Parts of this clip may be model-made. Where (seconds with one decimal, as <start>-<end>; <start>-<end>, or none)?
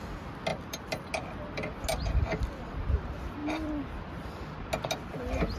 0.5-1.1; 3.4-4.7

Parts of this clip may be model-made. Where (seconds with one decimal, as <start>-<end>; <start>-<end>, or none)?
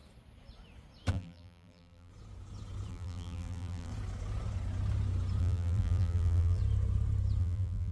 1.1-2.1; 2.9-3.9; 5.4-6.6; 7.4-7.9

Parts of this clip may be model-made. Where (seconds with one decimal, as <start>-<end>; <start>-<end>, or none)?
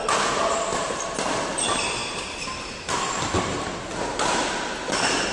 none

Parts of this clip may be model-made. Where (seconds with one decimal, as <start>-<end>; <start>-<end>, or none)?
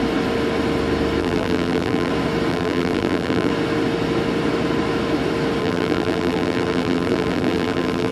1.2-2.1; 2.5-3.5; 5.6-8.1